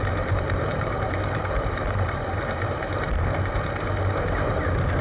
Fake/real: fake